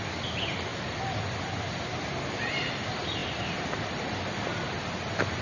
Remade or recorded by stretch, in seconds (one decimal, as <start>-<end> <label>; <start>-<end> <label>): 0.0-5.4 remade